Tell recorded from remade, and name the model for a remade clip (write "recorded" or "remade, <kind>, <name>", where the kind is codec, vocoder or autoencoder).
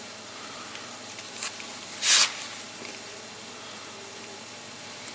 recorded